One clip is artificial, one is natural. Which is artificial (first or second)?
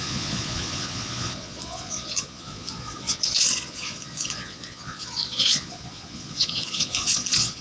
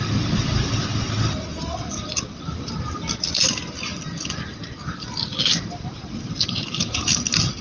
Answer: first